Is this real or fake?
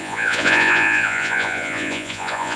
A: fake